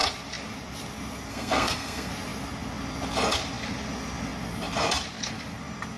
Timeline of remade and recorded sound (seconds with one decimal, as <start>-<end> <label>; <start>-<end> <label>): 0.0-1.3 recorded; 1.3-2.1 remade; 2.1-6.0 recorded